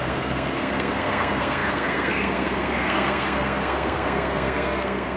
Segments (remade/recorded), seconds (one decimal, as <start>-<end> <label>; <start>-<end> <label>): 0.0-5.2 remade